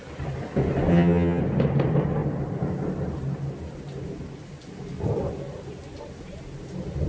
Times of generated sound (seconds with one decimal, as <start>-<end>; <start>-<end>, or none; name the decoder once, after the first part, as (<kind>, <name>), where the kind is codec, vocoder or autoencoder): 0.9-1.4 (vocoder, HiFi-GAN)